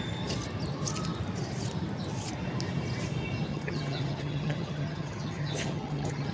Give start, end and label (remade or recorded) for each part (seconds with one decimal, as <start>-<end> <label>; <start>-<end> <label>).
0.0-3.5 recorded; 3.5-6.3 remade